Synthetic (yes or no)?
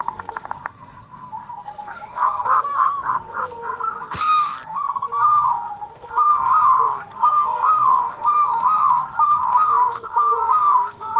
yes